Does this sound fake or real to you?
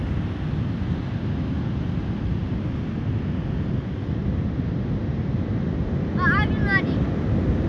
real